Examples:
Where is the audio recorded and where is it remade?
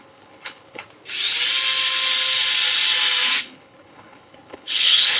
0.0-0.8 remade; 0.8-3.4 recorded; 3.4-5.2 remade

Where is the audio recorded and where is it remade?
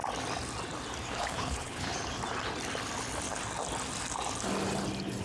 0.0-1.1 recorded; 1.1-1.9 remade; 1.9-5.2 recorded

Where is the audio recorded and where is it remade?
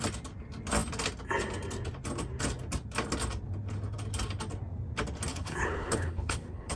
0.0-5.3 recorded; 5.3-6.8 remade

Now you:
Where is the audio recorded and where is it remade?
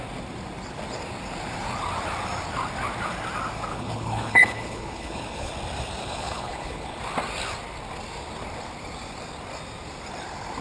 0.0-3.7 recorded; 3.7-5.5 remade; 5.5-6.0 recorded; 6.0-7.0 remade; 7.0-10.6 recorded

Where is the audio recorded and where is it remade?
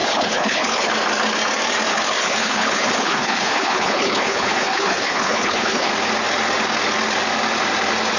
0.0-0.9 remade; 0.9-1.9 recorded; 1.9-5.9 remade; 5.9-8.2 recorded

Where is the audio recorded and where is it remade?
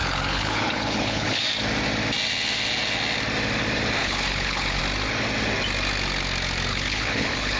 0.0-1.4 remade; 1.4-4.0 recorded; 4.0-4.8 remade; 4.8-6.7 recorded; 6.7-7.6 remade